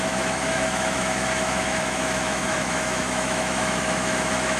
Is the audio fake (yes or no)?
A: yes